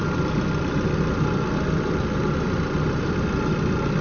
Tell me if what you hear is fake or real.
real